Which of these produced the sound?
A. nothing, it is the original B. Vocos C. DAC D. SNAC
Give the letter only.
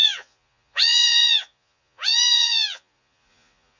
B